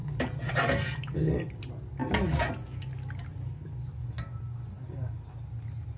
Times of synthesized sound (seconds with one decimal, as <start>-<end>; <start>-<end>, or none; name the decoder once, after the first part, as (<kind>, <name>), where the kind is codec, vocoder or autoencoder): 0.0-1.6 (vocoder, BigVGAN v2)